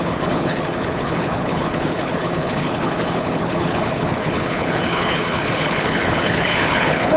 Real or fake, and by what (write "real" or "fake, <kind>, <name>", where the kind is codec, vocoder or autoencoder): fake, codec, HILCodec